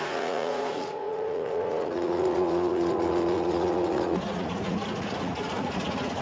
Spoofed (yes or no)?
yes